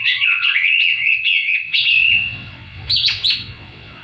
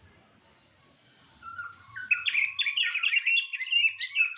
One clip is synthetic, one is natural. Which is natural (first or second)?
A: second